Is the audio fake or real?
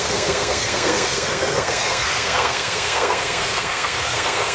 fake